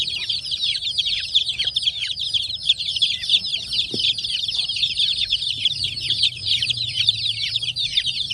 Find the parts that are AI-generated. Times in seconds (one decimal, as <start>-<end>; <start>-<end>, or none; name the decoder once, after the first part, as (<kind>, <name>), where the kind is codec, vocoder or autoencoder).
0.0-3.5 (vocoder, BigVGAN v2); 4.4-8.3